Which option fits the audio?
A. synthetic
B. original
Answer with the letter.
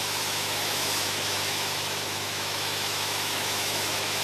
A